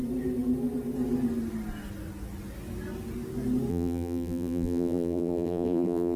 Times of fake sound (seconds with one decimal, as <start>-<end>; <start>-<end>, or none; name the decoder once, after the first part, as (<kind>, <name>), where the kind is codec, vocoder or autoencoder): 3.7-6.2 (vocoder, BigVGAN v2)

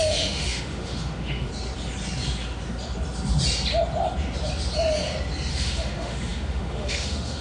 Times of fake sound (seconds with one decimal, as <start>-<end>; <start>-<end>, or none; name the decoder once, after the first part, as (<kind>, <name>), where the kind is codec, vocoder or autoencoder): 0.0-1.5 (autoencoder, DAC-VAE); 5.5-7.4

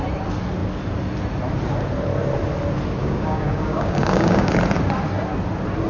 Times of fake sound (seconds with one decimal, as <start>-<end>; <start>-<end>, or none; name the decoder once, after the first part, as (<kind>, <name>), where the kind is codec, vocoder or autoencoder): 3.0-4.5 (codec, DAC)